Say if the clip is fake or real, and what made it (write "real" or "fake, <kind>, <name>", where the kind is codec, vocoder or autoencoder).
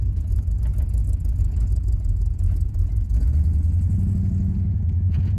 fake, vocoder, Vocos